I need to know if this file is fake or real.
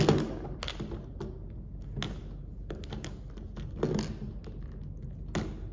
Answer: real